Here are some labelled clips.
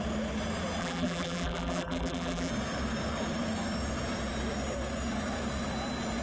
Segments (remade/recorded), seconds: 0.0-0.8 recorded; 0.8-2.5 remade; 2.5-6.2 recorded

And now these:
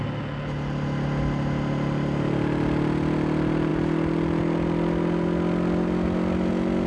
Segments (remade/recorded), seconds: 0.0-6.9 recorded